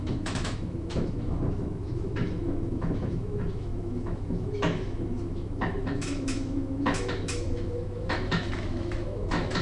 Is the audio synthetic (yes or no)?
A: yes